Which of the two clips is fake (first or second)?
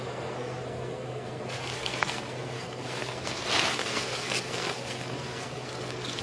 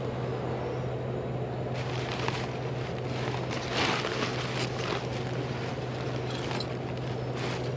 first